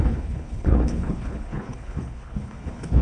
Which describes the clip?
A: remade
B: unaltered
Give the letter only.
A